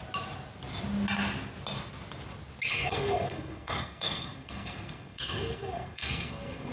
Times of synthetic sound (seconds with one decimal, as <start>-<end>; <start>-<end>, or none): 2.7-6.7